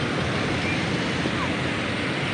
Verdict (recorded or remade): recorded